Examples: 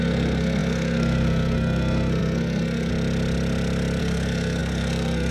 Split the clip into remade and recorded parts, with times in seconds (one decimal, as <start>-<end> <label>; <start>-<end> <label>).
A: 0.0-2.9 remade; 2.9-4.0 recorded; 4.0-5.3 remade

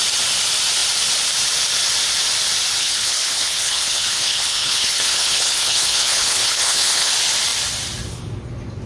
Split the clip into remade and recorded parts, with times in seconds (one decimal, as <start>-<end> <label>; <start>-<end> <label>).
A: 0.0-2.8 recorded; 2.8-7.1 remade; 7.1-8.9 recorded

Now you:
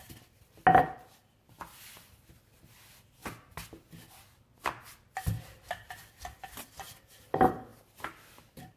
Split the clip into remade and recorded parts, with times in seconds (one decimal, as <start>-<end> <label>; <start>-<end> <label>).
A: 0.0-8.8 recorded

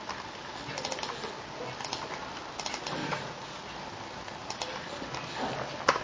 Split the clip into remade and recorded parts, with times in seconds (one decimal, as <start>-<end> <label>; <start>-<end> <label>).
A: 0.0-3.0 recorded; 3.0-3.6 remade; 3.6-6.0 recorded

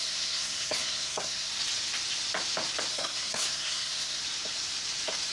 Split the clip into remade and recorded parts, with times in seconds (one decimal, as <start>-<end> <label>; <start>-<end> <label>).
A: 0.0-1.5 remade; 1.5-2.9 recorded; 2.9-4.2 remade; 4.2-5.3 recorded